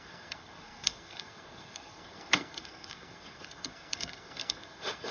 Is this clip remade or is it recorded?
remade